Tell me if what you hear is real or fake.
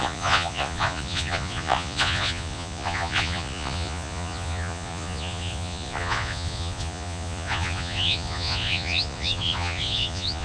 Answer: fake